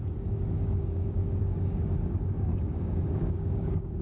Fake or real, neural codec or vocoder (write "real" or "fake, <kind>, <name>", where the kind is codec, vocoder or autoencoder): fake, codec, DAC